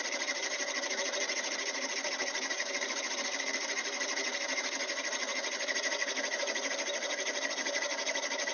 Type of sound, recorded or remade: remade